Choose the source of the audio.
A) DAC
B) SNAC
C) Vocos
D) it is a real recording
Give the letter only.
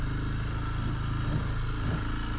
D